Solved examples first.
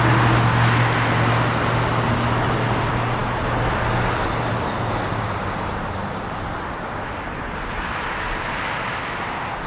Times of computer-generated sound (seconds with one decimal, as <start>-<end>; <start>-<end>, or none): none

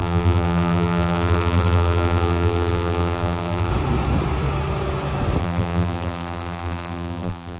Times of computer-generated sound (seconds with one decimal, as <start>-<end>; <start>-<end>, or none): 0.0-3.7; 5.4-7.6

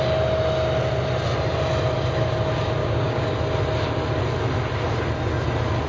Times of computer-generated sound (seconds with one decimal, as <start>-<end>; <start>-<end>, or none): 2.8-3.3

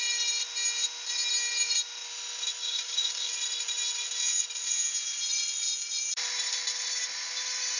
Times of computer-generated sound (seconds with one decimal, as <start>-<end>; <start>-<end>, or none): 2.6-3.3